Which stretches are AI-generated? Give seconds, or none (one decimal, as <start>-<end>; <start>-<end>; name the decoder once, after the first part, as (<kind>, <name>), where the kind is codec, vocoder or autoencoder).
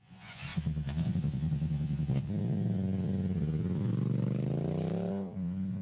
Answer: 0.0-3.9 (vocoder, Vocos); 5.1-5.8